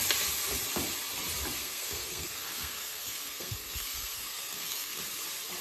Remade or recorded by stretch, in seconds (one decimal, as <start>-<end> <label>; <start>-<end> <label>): 0.0-1.6 recorded; 1.6-5.0 remade; 5.0-5.6 recorded